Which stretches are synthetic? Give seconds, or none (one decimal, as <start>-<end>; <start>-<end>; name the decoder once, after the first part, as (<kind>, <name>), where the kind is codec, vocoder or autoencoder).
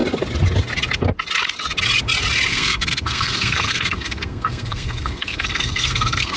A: 2.5-6.4 (codec, SNAC)